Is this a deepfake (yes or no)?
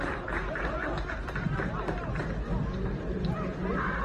no